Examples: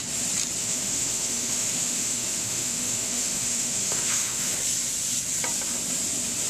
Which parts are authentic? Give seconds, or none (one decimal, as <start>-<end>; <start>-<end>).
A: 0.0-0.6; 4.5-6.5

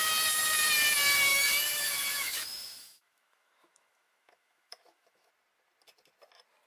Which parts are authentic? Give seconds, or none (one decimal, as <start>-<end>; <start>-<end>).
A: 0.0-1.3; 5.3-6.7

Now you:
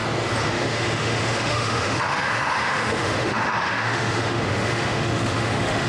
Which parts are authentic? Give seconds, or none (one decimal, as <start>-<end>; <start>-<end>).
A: 0.0-0.5